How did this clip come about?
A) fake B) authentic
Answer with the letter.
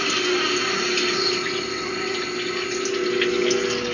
B